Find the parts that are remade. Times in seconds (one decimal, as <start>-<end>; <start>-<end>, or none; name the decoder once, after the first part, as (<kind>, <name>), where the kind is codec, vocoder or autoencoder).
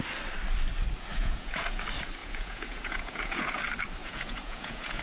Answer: 1.1-1.8 (vocoder, Vocos); 2.2-3.6; 4.0-5.0